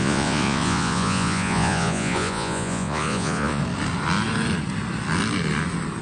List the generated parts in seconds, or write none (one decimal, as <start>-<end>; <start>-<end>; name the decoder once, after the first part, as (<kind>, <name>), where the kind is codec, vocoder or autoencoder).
0.0-3.6 (vocoder, Vocos)